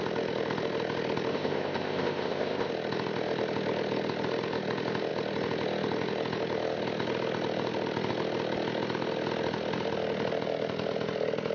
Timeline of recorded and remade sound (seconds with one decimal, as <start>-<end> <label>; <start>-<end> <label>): 0.0-1.3 recorded; 1.3-2.7 remade; 2.7-11.5 recorded

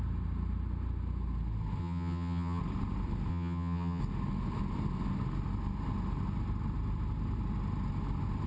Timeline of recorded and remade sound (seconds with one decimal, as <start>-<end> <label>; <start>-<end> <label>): 0.0-1.8 recorded; 1.8-2.6 remade; 2.6-3.3 recorded; 3.3-4.0 remade; 4.0-8.5 recorded

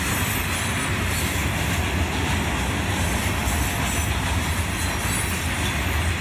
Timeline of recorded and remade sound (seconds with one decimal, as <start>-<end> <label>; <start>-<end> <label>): 0.0-6.2 recorded

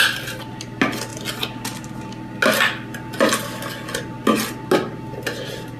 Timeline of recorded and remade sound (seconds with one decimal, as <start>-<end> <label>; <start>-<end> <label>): 0.0-5.8 recorded

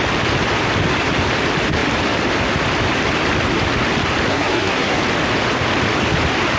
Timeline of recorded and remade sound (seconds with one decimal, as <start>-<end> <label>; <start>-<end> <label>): 0.0-4.3 recorded; 4.3-5.0 remade; 5.0-6.6 recorded